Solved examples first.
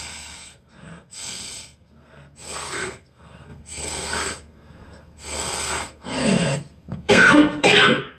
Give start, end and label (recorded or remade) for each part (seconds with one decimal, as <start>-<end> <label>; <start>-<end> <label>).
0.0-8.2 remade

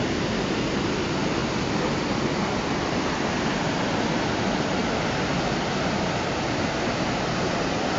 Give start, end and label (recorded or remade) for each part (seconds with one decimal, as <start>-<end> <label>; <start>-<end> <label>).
0.0-8.0 recorded

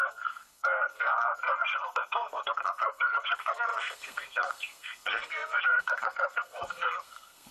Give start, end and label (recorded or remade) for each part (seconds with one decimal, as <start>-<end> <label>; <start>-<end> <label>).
0.0-7.5 remade

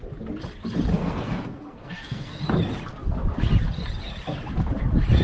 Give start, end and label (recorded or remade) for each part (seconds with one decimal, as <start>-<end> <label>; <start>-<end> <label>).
0.0-0.9 recorded; 0.9-2.4 remade; 2.4-5.2 recorded